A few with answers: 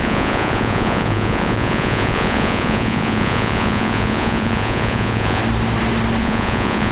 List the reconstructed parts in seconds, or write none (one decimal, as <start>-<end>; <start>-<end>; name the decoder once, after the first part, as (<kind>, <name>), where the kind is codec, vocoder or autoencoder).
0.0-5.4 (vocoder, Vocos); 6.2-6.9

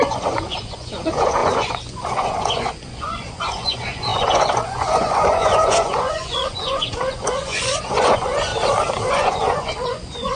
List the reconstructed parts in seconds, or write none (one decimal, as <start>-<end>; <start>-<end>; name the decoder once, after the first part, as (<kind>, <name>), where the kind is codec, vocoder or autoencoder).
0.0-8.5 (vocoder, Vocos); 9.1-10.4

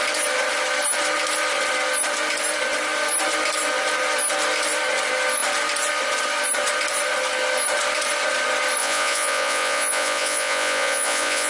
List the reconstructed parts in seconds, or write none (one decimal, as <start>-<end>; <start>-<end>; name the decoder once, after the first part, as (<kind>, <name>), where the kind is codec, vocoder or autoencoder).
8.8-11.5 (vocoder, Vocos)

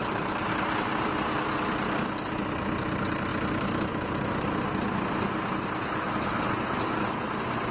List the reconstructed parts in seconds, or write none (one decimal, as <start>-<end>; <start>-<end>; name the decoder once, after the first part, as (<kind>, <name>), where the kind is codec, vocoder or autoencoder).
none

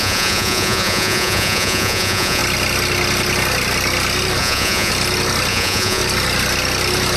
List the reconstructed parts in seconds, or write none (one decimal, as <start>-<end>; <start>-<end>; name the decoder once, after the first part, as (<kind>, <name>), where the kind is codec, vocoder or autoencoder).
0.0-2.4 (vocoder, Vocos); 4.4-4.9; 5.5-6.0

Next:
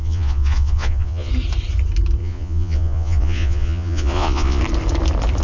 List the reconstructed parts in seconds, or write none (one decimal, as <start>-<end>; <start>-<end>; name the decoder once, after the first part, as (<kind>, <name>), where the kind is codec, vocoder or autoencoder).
0.0-1.3 (vocoder, Vocos); 2.2-4.6